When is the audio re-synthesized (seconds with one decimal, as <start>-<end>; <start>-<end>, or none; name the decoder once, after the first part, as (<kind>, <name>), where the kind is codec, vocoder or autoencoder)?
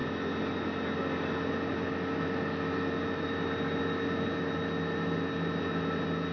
none